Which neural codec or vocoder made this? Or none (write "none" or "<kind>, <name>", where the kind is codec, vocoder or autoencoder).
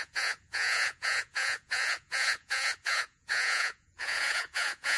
vocoder, Vocos